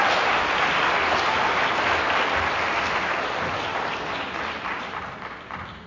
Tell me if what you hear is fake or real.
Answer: real